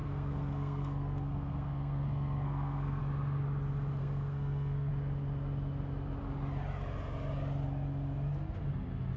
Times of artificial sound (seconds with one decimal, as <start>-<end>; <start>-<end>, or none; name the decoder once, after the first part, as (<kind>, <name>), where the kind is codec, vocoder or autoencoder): 0.0-3.0 (codec, SNAC); 4.0-4.9